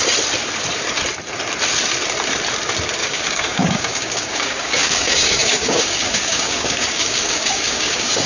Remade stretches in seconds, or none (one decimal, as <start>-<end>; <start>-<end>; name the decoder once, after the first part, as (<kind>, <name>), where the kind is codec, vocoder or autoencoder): 3.0-8.3 (codec, DAC)